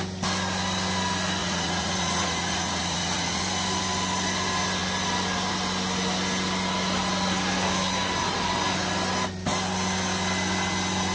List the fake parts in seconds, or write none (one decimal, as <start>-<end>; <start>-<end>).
1.4-3.4